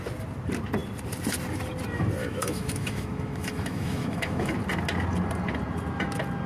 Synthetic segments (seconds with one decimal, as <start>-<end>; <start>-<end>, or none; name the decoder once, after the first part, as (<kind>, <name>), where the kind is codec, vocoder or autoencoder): 2.2-4.5 (autoencoder, DAC-VAE)